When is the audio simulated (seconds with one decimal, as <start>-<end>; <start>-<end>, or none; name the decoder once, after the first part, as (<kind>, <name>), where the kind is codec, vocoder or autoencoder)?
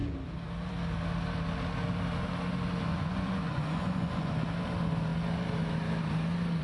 2.9-4.3 (vocoder, Vocos)